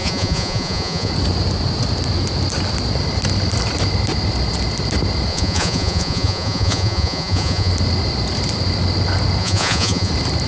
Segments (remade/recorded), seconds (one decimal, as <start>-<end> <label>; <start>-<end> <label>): 0.0-1.1 remade; 1.1-5.3 recorded; 5.3-7.7 remade; 7.7-9.4 recorded; 9.4-10.1 remade; 10.1-10.5 recorded